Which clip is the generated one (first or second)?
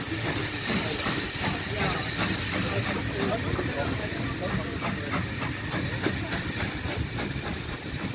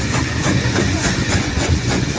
second